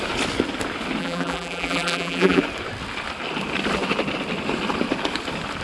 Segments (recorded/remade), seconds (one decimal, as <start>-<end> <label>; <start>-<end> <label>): 0.0-1.0 recorded; 1.0-2.4 remade; 2.4-5.6 recorded